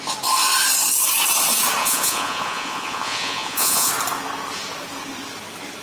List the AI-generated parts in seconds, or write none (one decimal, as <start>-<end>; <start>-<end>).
1.8-3.9